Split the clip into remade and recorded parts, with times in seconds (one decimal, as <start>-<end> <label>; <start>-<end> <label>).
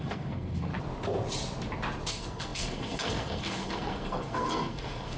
0.0-0.7 remade; 0.7-2.1 recorded; 2.1-5.2 remade